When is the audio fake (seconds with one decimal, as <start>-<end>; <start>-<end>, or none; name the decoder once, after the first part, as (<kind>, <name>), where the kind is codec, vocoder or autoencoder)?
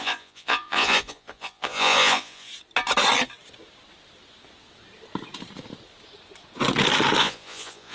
0.0-2.5 (vocoder, Vocos); 7.2-7.9